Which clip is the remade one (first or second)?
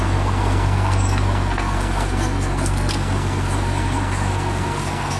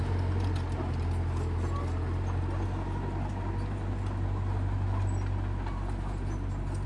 first